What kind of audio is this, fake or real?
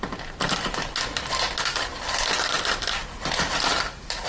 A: real